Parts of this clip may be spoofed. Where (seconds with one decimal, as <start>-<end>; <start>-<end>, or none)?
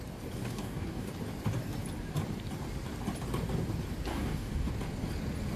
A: 0.4-1.1; 4.1-4.7